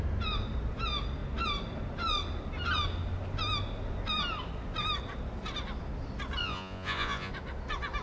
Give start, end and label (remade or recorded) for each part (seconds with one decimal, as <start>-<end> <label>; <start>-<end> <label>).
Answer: 0.0-6.4 recorded; 6.4-7.3 remade; 7.3-8.0 recorded